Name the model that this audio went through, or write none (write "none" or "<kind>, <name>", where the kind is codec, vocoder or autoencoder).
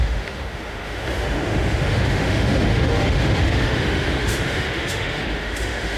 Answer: autoencoder, DAC-VAE